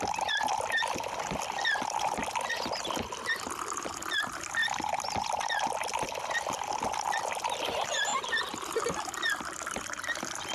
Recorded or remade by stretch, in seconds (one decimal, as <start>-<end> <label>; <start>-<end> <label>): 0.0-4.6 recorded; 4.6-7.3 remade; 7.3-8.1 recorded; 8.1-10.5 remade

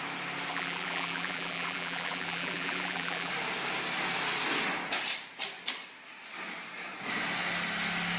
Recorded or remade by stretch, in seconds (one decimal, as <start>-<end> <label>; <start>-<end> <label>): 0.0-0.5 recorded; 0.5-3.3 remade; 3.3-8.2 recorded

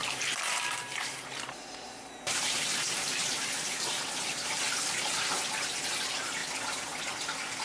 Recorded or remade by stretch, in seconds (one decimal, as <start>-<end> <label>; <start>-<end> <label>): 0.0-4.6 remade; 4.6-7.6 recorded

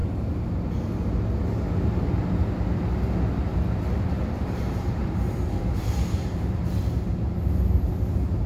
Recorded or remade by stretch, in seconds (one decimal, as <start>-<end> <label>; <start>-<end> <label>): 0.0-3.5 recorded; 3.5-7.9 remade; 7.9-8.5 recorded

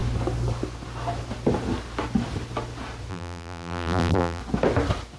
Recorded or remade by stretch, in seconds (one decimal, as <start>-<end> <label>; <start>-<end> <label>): 0.0-3.1 recorded; 3.1-4.4 remade; 4.4-5.2 recorded

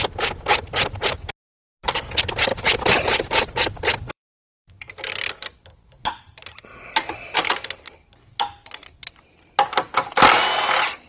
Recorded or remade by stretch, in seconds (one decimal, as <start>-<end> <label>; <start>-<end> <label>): 0.0-2.5 recorded; 2.5-5.1 remade; 5.1-6.7 recorded; 6.7-7.5 remade; 7.5-11.1 recorded